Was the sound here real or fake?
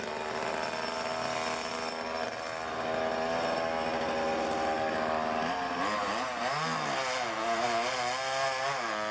real